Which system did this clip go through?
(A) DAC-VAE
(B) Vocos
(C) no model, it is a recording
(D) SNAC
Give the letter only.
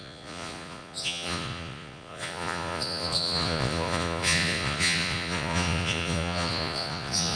B